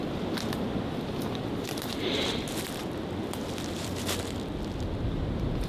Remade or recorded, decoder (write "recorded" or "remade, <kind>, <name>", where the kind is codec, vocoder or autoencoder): recorded